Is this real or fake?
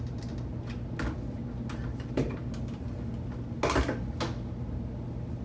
real